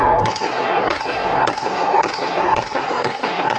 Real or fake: fake